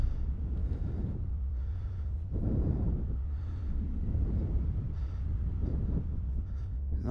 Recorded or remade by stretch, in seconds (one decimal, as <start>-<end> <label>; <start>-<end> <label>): 0.0-0.6 recorded; 0.6-4.9 remade; 4.9-7.1 recorded